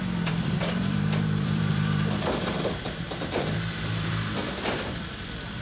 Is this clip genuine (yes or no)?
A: no